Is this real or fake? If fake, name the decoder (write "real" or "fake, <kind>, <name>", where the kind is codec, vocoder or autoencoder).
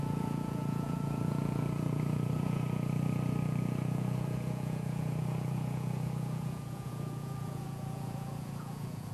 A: fake, vocoder, Vocos